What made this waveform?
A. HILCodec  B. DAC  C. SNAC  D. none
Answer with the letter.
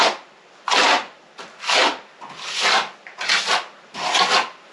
D